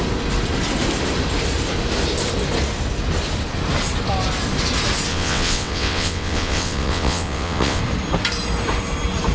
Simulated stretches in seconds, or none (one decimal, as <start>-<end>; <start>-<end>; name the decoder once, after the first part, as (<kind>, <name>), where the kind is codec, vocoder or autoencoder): 5.1-7.8 (vocoder, WaveNeXt)